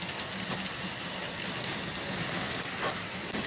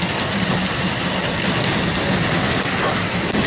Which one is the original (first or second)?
first